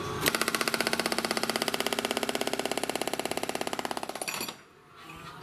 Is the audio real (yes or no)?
yes